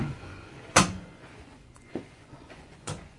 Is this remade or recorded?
remade